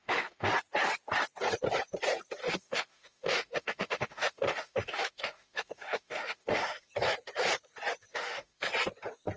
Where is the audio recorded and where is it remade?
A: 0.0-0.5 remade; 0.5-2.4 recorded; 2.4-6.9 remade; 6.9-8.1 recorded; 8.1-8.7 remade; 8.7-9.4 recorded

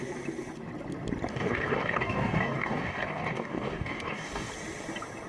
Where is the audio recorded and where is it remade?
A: 0.0-1.3 recorded; 1.3-4.5 remade; 4.5-5.3 recorded

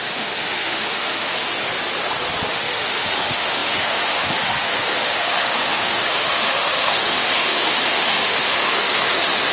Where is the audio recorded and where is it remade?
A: 0.0-1.3 remade; 1.3-2.5 recorded; 2.5-9.5 remade

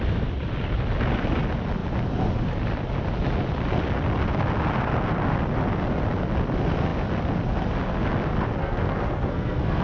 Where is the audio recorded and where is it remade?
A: 0.0-8.6 recorded; 8.6-9.8 remade

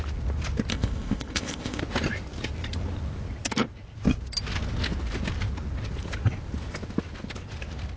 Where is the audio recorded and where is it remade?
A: 0.0-0.7 recorded; 0.7-1.8 remade; 1.8-8.0 recorded

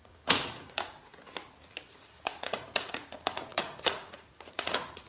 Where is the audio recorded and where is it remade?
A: 0.0-1.2 remade; 1.2-1.8 recorded; 1.8-5.1 remade

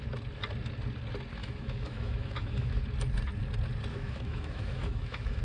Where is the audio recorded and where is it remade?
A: 0.0-1.4 recorded; 1.4-2.8 remade; 2.8-3.9 recorded; 3.9-5.4 remade